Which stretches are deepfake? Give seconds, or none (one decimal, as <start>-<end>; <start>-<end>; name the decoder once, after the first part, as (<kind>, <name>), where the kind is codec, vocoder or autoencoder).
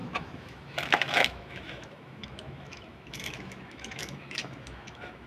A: 0.0-5.3 (autoencoder, DAC-VAE)